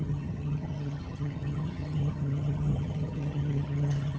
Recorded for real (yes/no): no